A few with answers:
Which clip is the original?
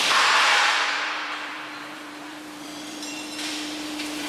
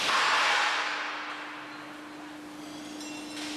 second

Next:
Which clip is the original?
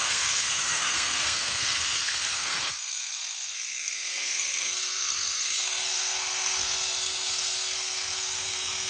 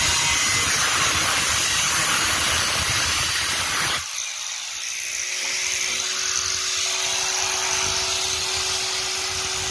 second